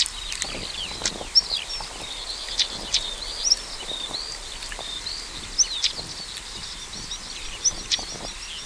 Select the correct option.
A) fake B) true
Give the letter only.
B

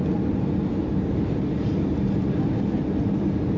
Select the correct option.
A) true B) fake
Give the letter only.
A